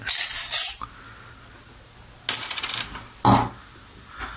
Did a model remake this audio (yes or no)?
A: no